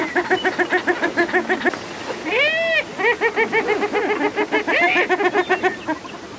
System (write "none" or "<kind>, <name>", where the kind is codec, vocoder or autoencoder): none